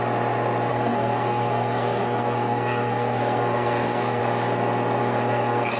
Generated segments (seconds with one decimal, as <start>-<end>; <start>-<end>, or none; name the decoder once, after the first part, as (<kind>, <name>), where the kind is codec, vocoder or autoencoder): 0.7-4.2 (codec, SNAC); 5.0-5.8